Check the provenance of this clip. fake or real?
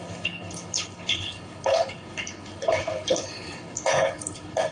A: fake